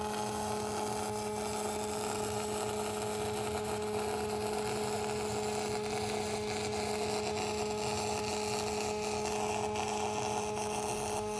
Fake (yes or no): no